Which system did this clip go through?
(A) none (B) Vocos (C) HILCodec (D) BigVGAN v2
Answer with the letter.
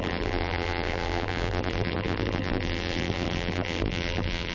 D